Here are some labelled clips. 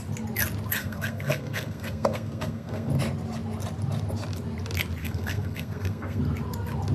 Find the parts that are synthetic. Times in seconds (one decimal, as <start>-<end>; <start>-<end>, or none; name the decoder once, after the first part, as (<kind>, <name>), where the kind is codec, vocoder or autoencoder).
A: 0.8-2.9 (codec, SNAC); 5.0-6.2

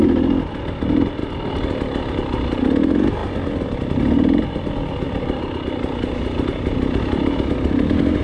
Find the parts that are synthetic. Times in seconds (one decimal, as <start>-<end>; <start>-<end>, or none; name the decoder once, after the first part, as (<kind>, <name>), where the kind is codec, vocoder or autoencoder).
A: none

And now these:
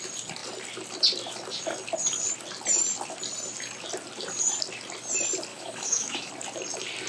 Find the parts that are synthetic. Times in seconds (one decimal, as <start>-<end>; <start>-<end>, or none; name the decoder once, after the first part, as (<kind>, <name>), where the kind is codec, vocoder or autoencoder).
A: 5.5-6.3 (autoencoder, DAC-VAE)